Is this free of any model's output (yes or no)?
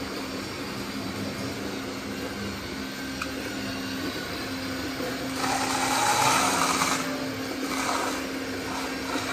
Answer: yes